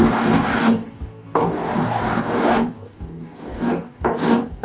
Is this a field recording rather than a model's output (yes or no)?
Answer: no